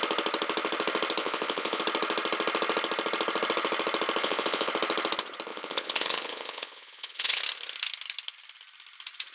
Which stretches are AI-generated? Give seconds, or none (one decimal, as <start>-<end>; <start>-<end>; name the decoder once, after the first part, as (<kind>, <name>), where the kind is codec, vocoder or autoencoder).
1.2-1.8 (vocoder, Vocos); 4.2-4.7; 5.5-7.4